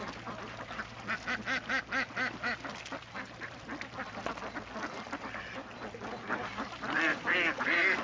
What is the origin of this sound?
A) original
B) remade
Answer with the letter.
A